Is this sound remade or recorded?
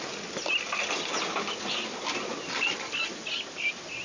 recorded